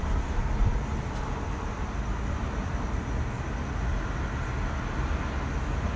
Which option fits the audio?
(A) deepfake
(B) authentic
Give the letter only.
B